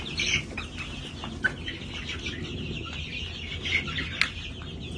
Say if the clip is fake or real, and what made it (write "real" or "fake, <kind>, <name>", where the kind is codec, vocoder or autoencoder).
real